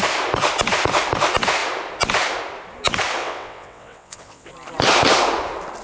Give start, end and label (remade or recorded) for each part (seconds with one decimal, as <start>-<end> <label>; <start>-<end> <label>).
0.0-3.2 recorded; 3.2-4.5 remade; 4.5-5.8 recorded